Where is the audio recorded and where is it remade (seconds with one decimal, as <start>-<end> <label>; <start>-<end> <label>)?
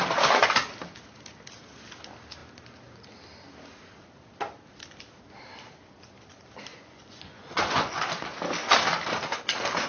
0.0-6.7 recorded; 6.7-8.0 remade; 8.0-9.9 recorded